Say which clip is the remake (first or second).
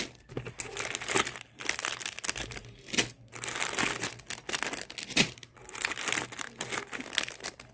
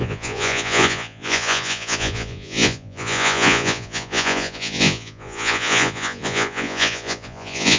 second